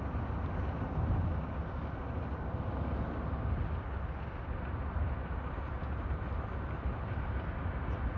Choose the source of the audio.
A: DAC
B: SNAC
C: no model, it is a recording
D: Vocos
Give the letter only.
C